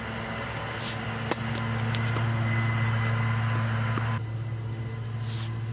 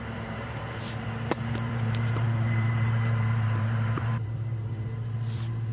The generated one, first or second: second